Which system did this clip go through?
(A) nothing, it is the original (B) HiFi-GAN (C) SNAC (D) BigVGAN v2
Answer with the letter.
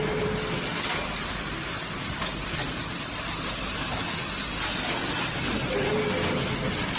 A